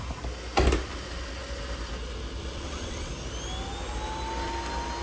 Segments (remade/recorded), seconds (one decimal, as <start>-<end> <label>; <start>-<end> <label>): 0.0-2.4 recorded; 2.4-3.1 remade; 3.1-5.0 recorded